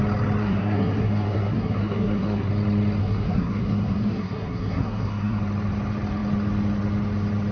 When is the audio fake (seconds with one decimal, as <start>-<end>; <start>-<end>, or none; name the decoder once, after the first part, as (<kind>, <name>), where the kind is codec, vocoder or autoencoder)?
0.4-2.5 (codec, SNAC); 3.0-5.4